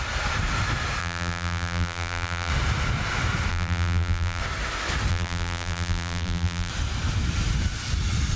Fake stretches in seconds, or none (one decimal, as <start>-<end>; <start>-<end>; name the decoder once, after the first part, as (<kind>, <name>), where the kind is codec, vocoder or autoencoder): 1.0-2.5 (vocoder, BigVGAN v2); 3.5-4.4; 5.1-6.7